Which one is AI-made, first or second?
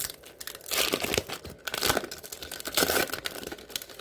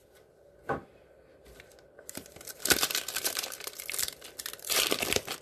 second